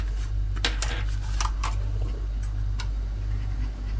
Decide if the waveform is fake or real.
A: real